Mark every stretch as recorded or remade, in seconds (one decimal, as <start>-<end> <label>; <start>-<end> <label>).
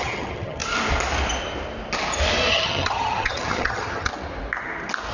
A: 0.0-0.6 remade; 0.6-2.5 recorded; 2.5-4.1 remade; 4.1-5.1 recorded